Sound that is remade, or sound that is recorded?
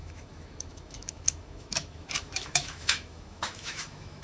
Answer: remade